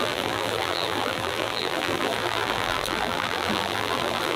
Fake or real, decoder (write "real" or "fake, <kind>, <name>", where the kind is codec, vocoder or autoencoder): fake, vocoder, BigVGAN v2